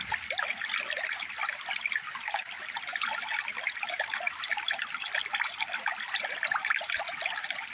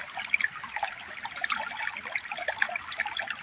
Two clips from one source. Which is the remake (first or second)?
first